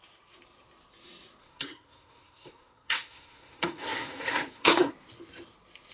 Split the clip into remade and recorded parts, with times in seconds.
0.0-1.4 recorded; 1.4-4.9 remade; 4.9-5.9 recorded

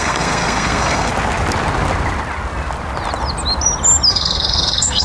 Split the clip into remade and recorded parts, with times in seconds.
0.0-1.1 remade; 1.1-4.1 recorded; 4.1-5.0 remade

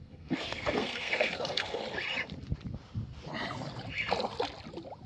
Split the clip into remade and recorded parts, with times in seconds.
0.0-1.8 remade; 1.8-5.1 recorded

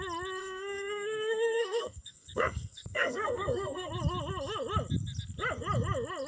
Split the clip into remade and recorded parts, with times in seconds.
0.0-0.4 recorded; 0.4-3.9 remade; 3.9-6.3 recorded

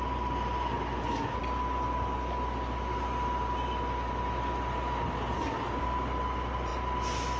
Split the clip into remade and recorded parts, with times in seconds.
0.0-7.4 recorded

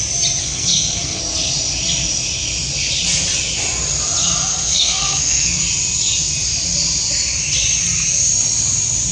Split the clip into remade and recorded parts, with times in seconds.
0.0-0.4 recorded; 0.4-1.2 remade; 1.2-4.5 recorded; 4.5-5.6 remade; 5.6-9.1 recorded

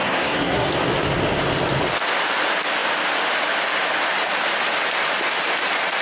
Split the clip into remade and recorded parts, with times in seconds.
0.0-0.7 remade; 0.7-6.0 recorded

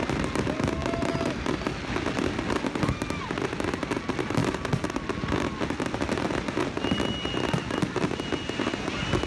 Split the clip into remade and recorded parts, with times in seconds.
0.0-9.3 recorded